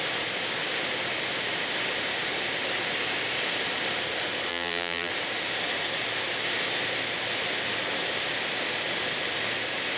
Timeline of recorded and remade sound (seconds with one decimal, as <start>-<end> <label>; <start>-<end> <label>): 0.0-4.5 recorded; 4.5-5.1 remade; 5.1-10.0 recorded